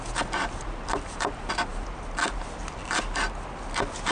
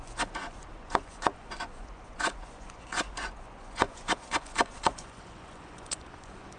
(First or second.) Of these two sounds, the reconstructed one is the second